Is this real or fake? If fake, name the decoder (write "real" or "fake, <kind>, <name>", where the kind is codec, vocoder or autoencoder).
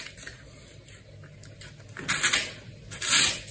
real